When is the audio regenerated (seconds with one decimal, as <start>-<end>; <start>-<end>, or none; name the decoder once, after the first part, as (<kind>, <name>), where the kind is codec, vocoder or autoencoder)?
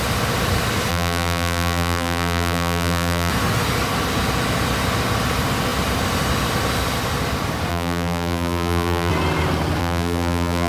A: 0.9-3.3 (vocoder, BigVGAN v2); 7.7-9.1; 9.8-10.7